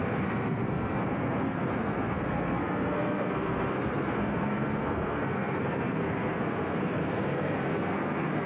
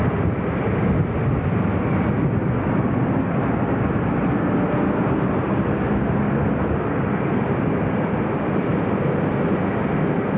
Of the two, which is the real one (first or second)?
second